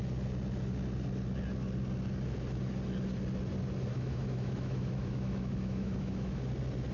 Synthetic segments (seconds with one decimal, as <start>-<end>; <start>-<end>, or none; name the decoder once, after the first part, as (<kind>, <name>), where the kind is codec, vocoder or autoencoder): 3.9-6.4 (autoencoder, DAC-VAE)